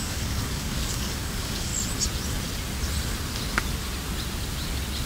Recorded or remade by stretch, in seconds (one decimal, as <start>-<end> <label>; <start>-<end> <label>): 0.0-1.7 remade; 1.7-5.1 recorded

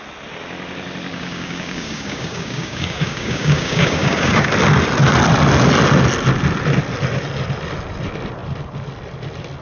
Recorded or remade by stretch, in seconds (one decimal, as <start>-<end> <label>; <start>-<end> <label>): 0.0-1.1 recorded; 1.1-4.5 remade; 4.5-9.6 recorded